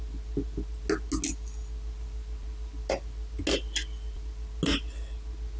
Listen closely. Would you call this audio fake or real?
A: real